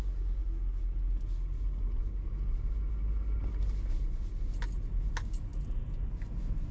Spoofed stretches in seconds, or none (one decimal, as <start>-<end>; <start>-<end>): none